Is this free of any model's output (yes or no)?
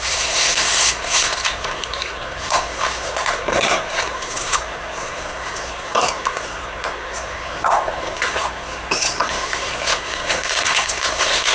no